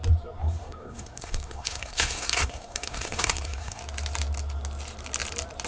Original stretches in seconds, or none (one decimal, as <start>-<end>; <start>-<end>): 0.0-0.4; 3.8-5.7